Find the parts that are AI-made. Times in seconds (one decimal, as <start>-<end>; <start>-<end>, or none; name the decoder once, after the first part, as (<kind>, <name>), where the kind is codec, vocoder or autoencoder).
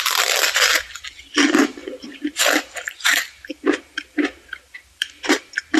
1.8-5.3 (vocoder, BigVGAN v2)